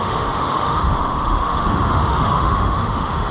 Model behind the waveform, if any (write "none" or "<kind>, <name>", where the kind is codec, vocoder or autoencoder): autoencoder, DAC-VAE